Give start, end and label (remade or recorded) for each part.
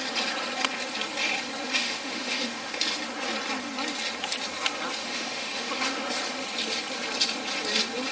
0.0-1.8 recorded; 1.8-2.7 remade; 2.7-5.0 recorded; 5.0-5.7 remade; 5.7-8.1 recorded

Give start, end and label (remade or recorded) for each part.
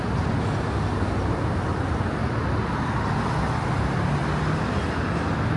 0.0-5.6 recorded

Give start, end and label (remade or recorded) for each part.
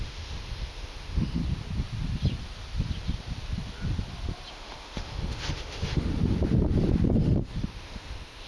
0.0-1.4 remade; 1.4-4.5 recorded; 4.5-6.1 remade; 6.1-7.1 recorded; 7.1-8.5 remade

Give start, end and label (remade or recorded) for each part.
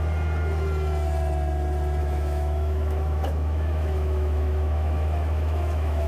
0.0-2.0 recorded; 2.0-6.1 remade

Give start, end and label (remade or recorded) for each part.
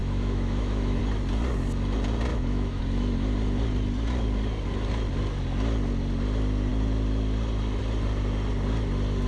0.0-1.0 remade; 1.0-2.3 recorded; 2.3-2.8 remade; 2.8-9.3 recorded